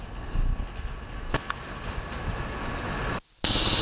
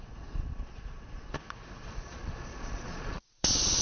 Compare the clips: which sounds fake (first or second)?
second